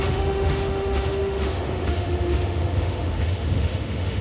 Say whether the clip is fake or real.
fake